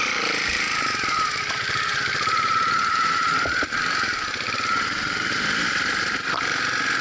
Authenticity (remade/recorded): remade